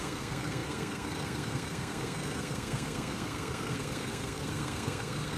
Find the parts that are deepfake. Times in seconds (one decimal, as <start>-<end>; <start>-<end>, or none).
0.0-5.4